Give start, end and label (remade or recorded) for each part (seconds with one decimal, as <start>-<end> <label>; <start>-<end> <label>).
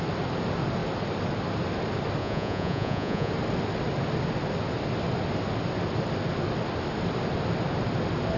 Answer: 0.0-2.2 recorded; 2.2-3.3 remade; 3.3-8.4 recorded